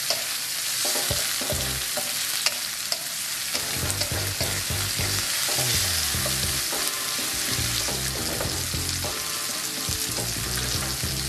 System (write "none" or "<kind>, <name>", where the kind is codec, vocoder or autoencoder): none